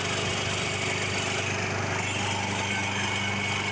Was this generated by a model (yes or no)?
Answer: no